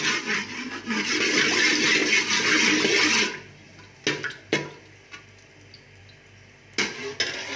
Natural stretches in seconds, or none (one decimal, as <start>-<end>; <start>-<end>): 0.0-7.6